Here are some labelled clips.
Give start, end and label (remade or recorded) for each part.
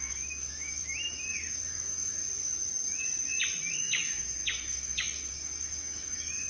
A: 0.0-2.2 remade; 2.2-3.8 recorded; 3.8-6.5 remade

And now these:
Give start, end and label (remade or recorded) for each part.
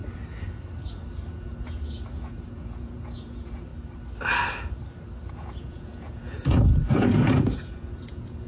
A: 0.0-1.3 recorded; 1.3-3.7 remade; 3.7-5.3 recorded; 5.3-8.5 remade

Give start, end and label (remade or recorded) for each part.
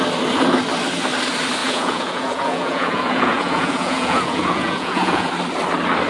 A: 0.0-1.6 recorded; 1.6-5.3 remade; 5.3-6.1 recorded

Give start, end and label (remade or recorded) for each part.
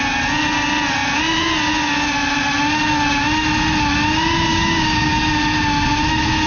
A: 0.0-4.5 recorded; 4.5-5.1 remade; 5.1-6.5 recorded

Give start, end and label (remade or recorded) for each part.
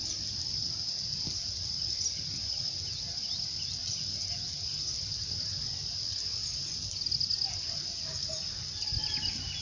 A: 0.0-9.6 recorded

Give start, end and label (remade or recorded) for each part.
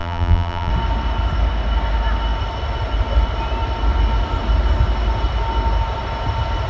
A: 0.0-0.7 remade; 0.7-6.7 recorded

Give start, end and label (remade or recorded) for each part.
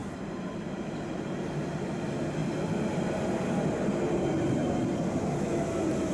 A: 0.0-1.6 remade; 1.6-6.1 recorded